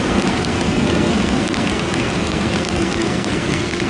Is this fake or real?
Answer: fake